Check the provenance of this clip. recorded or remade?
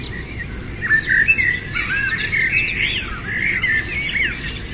recorded